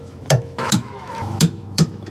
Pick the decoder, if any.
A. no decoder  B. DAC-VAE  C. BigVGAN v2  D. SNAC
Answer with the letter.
B